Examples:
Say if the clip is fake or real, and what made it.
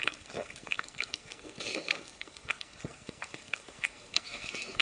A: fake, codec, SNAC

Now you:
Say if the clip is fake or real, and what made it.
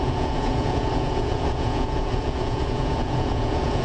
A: fake, vocoder, Vocos